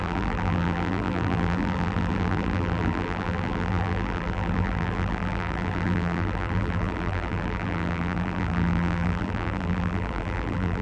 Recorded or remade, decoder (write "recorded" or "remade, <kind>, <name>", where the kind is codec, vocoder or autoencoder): remade, vocoder, BigVGAN v2